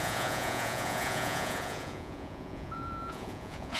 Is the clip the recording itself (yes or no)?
no